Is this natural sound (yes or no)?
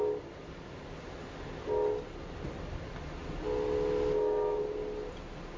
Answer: yes